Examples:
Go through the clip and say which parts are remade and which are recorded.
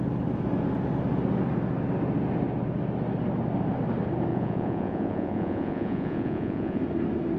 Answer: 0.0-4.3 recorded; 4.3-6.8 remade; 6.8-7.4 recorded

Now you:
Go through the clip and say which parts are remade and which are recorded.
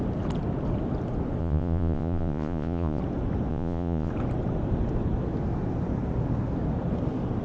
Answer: 0.0-1.4 recorded; 1.4-3.0 remade; 3.0-3.5 recorded; 3.5-4.1 remade; 4.1-7.4 recorded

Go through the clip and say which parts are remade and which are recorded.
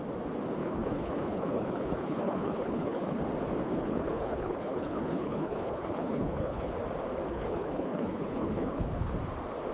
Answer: 0.0-0.6 recorded; 0.6-3.2 remade; 3.2-3.6 recorded; 3.6-6.7 remade; 6.7-7.3 recorded; 7.3-9.1 remade; 9.1-9.7 recorded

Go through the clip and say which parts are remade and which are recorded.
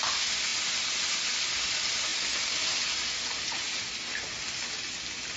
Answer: 0.0-5.4 recorded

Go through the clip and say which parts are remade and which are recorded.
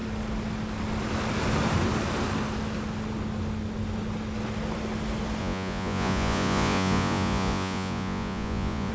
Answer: 0.0-5.4 recorded; 5.4-8.9 remade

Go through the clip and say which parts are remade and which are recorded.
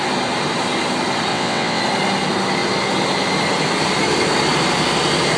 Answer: 0.0-1.3 recorded; 1.3-1.8 remade; 1.8-5.4 recorded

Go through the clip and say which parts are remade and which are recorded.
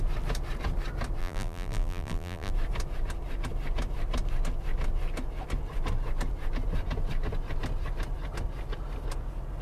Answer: 0.0-1.2 recorded; 1.2-2.5 remade; 2.5-9.6 recorded